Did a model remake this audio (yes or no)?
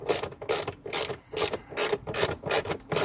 no